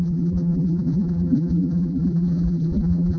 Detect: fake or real fake